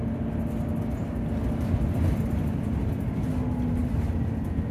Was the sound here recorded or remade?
recorded